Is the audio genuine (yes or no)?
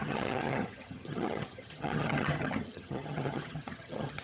no